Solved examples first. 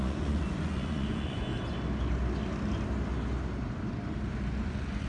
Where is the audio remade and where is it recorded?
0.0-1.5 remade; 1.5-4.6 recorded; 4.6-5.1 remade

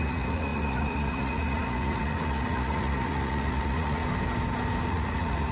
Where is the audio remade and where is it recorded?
0.0-4.0 remade; 4.0-4.9 recorded; 4.9-5.5 remade

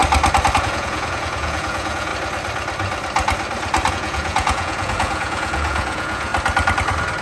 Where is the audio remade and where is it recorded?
0.0-0.6 recorded; 0.6-2.1 remade; 2.1-3.9 recorded; 3.9-6.3 remade; 6.3-7.2 recorded

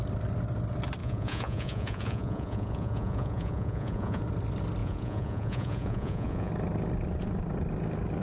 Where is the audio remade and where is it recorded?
0.0-1.0 recorded; 1.0-4.2 remade; 4.2-4.8 recorded; 4.8-6.5 remade; 6.5-8.2 recorded

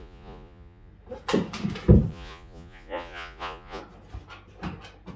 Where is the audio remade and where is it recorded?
0.0-0.9 remade; 0.9-2.1 recorded; 2.1-3.8 remade; 3.8-5.2 recorded

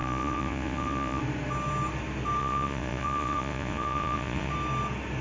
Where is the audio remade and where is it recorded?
0.0-1.2 remade; 1.2-2.4 recorded; 2.4-4.5 remade; 4.5-5.2 recorded